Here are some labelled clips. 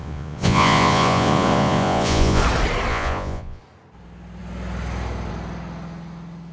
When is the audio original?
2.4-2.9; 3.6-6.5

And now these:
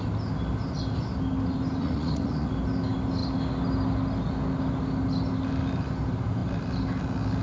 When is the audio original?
0.0-1.8; 2.5-7.4